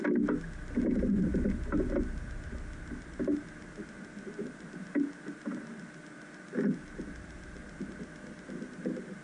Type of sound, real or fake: real